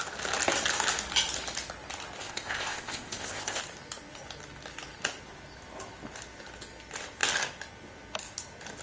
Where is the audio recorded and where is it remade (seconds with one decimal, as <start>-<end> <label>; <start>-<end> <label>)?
0.0-2.2 recorded; 2.2-3.6 remade; 3.6-8.8 recorded

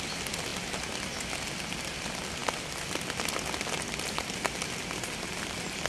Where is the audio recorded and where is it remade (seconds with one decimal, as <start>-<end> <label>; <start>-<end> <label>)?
0.0-5.9 recorded

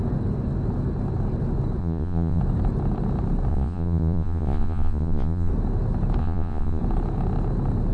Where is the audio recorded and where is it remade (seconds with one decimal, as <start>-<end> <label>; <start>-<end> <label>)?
0.0-1.8 recorded; 1.8-2.4 remade; 2.4-3.5 recorded; 3.5-5.5 remade; 5.5-6.2 recorded; 6.2-6.8 remade; 6.8-7.9 recorded

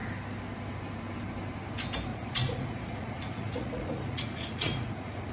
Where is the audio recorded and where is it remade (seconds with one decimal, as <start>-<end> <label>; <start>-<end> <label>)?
0.0-2.1 recorded; 2.1-5.3 remade

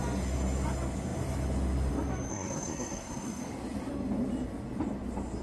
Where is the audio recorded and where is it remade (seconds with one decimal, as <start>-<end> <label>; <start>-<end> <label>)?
0.0-2.3 recorded; 2.3-3.4 remade; 3.4-5.4 recorded

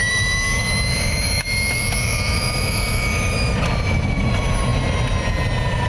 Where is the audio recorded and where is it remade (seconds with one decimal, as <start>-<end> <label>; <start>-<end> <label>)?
0.0-3.5 remade; 3.5-5.9 recorded

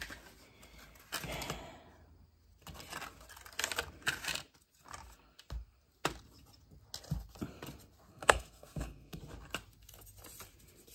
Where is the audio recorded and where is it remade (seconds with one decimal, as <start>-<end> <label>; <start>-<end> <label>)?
0.0-8.1 recorded; 8.1-9.2 remade; 9.2-10.9 recorded

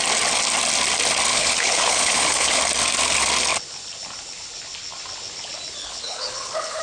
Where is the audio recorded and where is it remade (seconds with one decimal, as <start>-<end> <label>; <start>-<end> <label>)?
0.0-1.3 recorded; 1.3-2.6 remade; 2.6-5.8 recorded; 5.8-6.8 remade